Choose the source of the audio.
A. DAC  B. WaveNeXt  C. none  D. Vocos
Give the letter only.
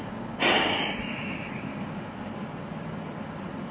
C